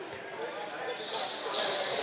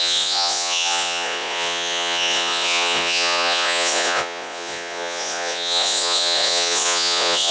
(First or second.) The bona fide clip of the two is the first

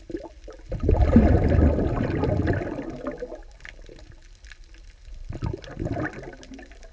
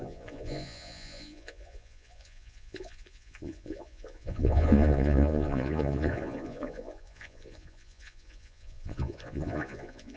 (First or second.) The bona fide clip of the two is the first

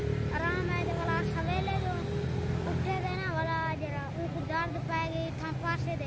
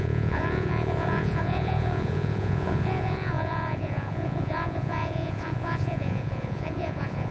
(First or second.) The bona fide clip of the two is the first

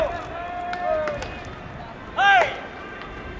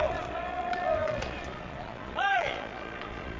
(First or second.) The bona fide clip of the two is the first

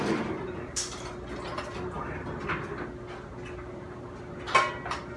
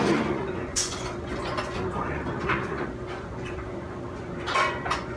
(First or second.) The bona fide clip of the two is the first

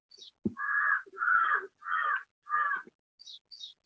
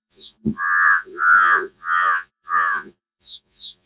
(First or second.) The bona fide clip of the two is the first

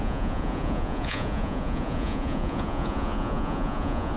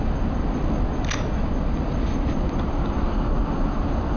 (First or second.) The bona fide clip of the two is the second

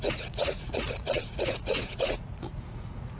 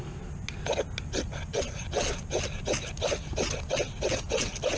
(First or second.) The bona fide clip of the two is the second